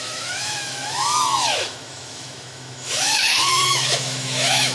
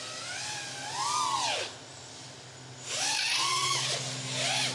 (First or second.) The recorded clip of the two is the second